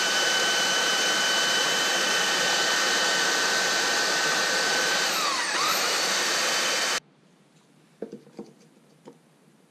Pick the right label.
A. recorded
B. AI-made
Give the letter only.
B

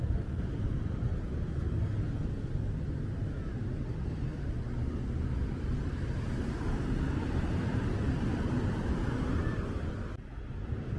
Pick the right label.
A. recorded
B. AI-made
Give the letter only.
A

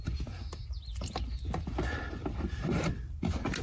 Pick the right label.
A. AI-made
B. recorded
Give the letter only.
B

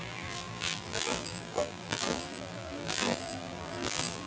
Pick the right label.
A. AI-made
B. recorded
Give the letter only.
A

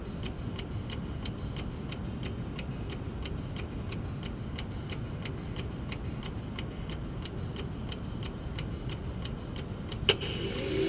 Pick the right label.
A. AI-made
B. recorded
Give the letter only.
B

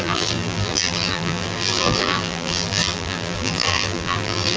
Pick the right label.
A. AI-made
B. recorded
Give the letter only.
A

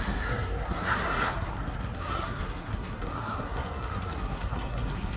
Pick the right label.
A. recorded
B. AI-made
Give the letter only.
B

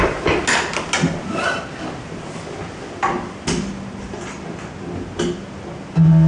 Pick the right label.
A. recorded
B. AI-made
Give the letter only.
A